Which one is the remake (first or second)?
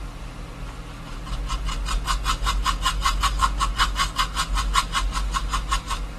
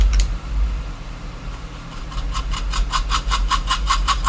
second